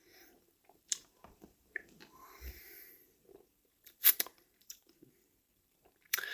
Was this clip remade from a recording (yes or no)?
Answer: yes